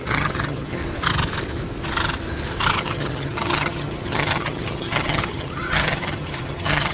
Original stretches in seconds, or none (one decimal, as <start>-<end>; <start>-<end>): 0.8-2.8